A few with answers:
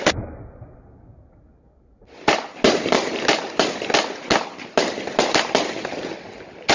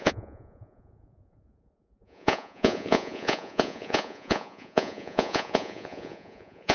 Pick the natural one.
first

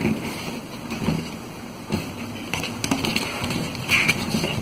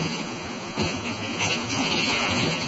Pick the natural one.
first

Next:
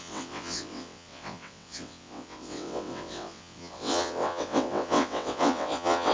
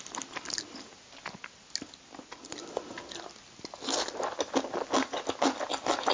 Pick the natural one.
second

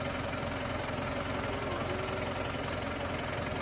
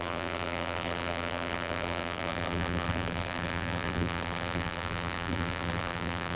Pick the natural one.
first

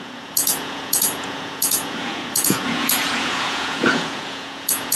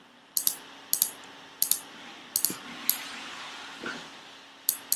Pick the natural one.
second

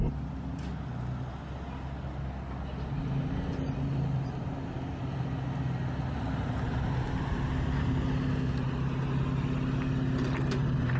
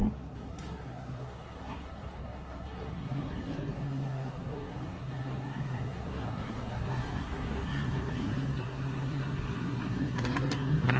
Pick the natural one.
first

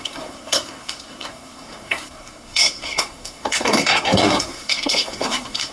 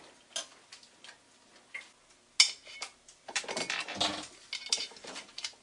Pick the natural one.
second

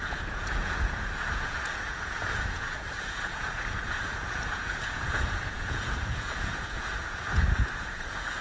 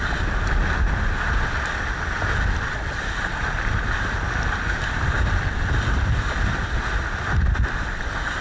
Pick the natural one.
second